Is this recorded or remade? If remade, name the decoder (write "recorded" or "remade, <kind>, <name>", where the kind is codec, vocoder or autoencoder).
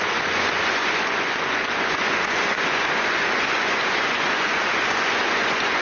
remade, vocoder, Vocos